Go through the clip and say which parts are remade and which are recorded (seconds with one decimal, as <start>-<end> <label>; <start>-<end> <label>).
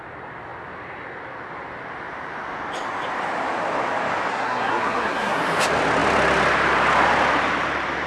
0.0-4.3 recorded; 4.3-5.4 remade; 5.4-8.1 recorded